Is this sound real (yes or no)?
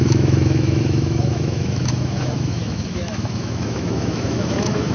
no